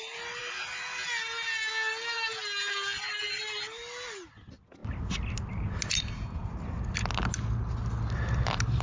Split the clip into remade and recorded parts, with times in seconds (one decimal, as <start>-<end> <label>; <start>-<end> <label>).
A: 0.0-8.8 recorded